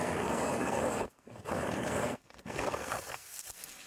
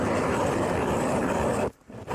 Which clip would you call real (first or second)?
second